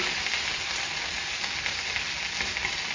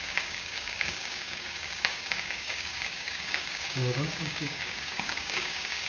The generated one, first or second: second